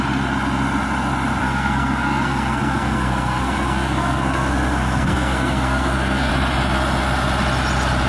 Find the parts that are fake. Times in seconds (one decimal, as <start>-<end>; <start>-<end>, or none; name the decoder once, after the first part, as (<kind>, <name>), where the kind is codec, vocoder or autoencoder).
1.4-6.3 (codec, SNAC)